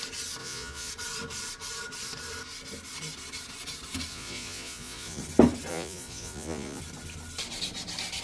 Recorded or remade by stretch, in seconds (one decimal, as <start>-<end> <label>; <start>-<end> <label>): 0.0-0.4 recorded; 0.4-0.9 remade; 0.9-4.1 recorded; 4.1-5.2 remade; 5.2-5.7 recorded; 5.7-6.8 remade; 6.8-8.2 recorded